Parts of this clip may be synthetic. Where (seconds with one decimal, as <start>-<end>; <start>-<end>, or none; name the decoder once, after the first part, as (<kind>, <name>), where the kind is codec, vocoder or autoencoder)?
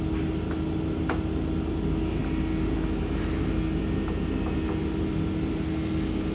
none